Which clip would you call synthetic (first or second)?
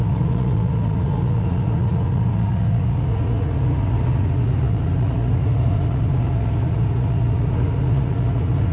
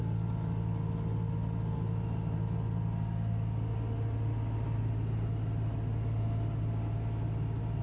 first